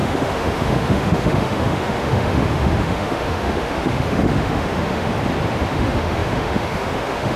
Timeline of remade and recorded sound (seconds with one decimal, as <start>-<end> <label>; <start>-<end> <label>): 0.0-5.1 remade; 5.1-5.7 recorded; 5.7-7.4 remade